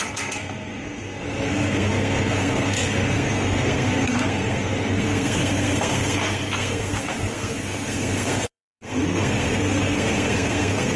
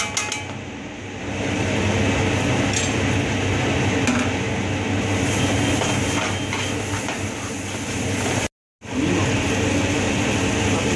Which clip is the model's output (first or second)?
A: first